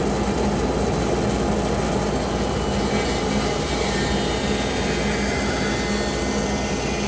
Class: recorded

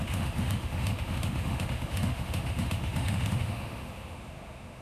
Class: remade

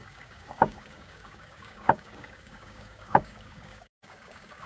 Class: remade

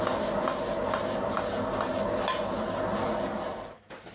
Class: recorded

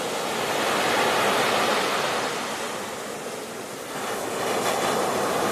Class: recorded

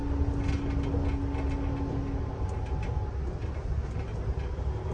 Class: recorded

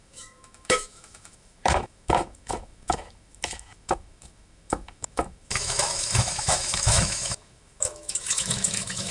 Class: remade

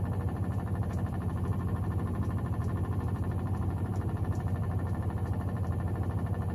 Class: remade